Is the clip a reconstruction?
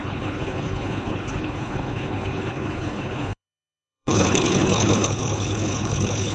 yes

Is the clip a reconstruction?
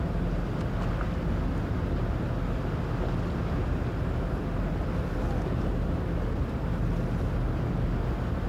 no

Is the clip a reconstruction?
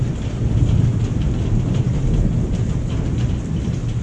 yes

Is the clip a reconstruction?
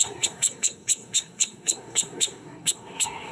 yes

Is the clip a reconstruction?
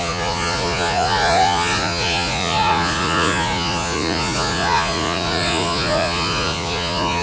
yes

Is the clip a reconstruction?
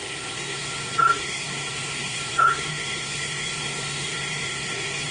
yes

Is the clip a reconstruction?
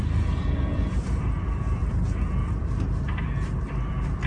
yes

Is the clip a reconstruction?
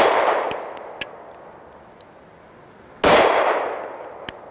no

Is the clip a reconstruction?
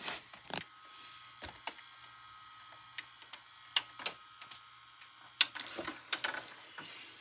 no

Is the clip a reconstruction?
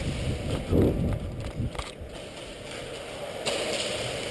no